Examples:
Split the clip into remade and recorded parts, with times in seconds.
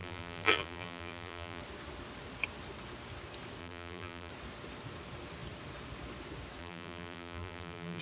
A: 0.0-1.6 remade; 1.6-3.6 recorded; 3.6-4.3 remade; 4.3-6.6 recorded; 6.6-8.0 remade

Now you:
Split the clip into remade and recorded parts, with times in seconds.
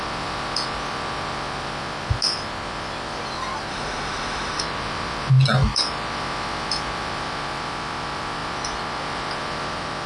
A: 0.0-3.7 recorded; 3.7-4.6 remade; 4.6-10.1 recorded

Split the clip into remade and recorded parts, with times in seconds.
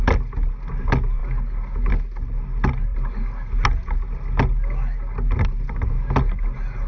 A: 0.0-6.9 recorded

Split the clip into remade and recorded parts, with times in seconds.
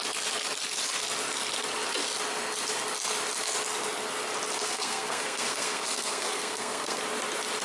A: 0.0-4.6 recorded; 4.6-7.0 remade; 7.0-7.6 recorded